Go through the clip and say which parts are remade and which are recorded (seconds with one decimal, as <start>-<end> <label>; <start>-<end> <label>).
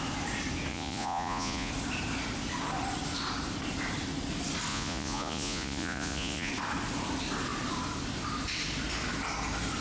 0.0-0.7 recorded; 0.7-1.7 remade; 1.7-4.7 recorded; 4.7-6.5 remade; 6.5-9.8 recorded